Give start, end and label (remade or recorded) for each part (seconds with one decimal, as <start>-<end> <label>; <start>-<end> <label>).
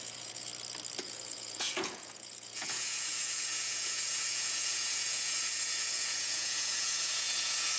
0.0-0.5 remade; 0.5-1.0 recorded; 1.0-7.8 remade